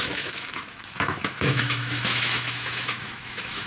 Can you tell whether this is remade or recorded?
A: remade